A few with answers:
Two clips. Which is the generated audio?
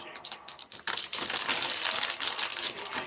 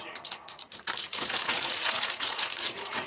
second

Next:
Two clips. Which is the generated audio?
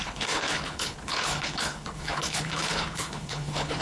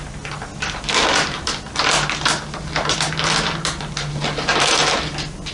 first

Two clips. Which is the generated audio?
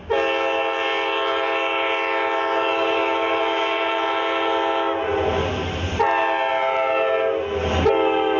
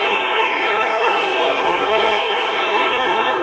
second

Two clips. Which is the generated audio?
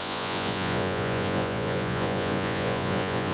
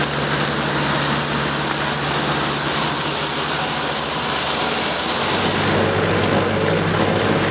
first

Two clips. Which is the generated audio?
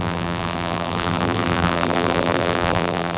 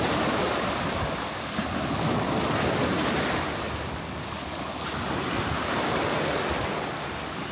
first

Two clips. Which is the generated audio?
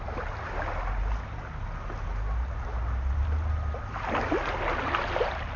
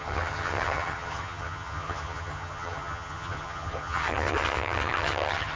second